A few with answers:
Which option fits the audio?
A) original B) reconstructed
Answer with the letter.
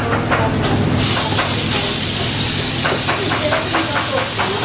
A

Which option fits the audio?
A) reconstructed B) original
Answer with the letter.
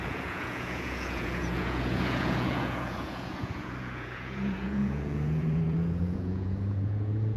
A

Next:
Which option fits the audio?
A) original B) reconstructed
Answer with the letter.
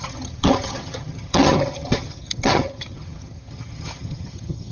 B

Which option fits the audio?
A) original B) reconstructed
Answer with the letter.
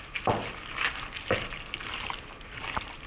A